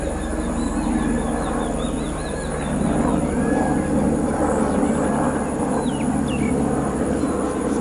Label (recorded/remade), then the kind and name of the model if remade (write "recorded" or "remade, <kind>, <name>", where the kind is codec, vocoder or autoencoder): recorded